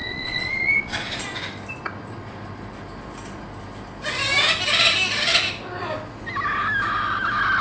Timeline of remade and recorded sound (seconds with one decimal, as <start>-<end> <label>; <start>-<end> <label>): 0.0-1.2 remade; 1.2-7.6 recorded